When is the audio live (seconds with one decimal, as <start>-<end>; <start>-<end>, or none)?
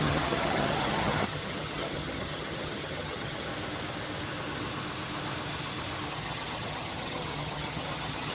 3.5-6.1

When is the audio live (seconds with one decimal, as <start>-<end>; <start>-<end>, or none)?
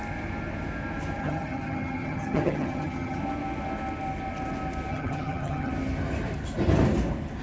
0.0-1.2; 3.2-4.9; 5.7-7.4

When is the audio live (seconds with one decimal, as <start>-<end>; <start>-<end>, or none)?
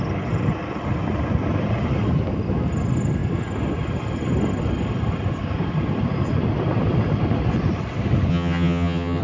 0.0-8.3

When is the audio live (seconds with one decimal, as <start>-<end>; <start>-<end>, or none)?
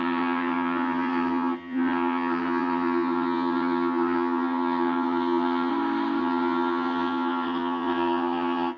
5.7-6.2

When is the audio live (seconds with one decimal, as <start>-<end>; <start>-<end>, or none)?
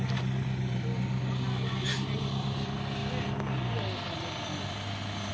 0.0-5.3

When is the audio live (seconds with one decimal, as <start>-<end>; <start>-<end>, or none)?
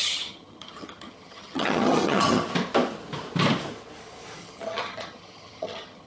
2.4-4.4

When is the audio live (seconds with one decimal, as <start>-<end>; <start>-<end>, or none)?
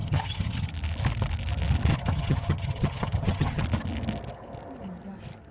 0.7-1.9; 3.6-5.5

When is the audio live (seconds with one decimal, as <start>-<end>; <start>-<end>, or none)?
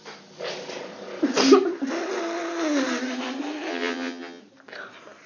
0.0-3.7; 4.4-5.3